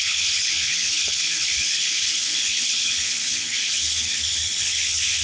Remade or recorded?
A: remade